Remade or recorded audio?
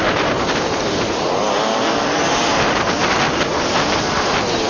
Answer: recorded